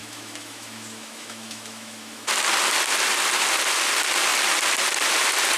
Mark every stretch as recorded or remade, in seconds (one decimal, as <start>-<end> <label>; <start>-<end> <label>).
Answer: 0.0-2.3 remade; 2.3-5.6 recorded

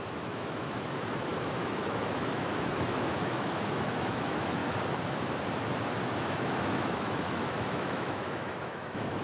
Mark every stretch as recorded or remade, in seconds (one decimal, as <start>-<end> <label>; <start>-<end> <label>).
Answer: 0.0-4.6 remade; 4.6-6.0 recorded; 6.0-9.2 remade

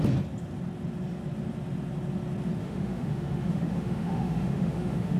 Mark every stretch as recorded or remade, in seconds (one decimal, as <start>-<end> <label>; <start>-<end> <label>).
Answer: 0.0-2.6 recorded; 2.6-5.2 remade

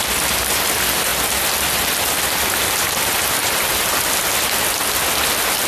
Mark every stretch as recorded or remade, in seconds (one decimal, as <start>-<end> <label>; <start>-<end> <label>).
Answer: 0.0-5.7 recorded

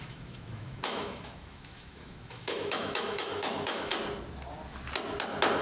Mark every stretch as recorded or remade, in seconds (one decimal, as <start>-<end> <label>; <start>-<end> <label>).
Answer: 0.0-3.9 remade; 3.9-5.6 recorded